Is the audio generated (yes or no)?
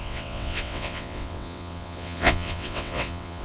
yes